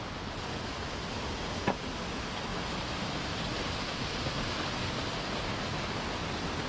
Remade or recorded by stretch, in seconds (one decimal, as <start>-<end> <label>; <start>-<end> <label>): 0.0-6.7 recorded